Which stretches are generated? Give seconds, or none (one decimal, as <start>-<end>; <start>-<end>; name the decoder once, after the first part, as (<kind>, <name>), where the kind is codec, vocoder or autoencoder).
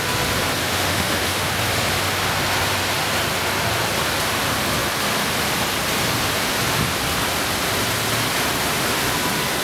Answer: 0.6-1.5 (autoencoder, DAC-VAE)